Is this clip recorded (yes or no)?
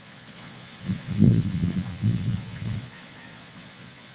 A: no